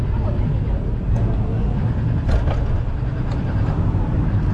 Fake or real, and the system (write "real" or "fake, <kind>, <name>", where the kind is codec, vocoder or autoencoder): real